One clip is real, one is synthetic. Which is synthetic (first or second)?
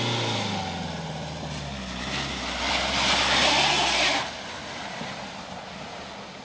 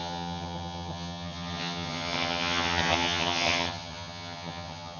second